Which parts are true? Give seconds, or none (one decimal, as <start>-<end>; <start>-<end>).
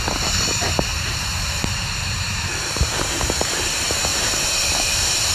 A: 0.0-0.9; 2.9-4.1